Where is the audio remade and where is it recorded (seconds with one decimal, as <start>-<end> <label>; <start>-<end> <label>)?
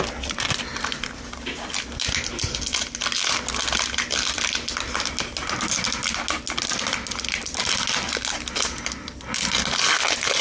0.0-10.4 recorded